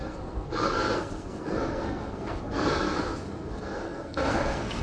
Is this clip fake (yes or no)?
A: yes